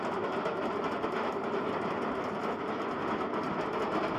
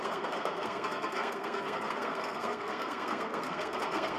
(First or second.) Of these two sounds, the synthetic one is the second